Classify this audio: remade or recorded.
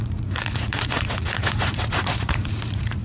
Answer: remade